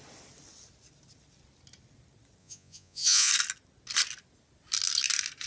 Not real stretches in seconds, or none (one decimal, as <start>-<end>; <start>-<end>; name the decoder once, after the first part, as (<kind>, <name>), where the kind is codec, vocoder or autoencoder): 2.4-3.3 (vocoder, Vocos)